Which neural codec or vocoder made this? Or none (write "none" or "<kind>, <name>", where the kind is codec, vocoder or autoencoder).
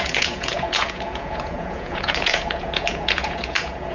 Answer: vocoder, Vocos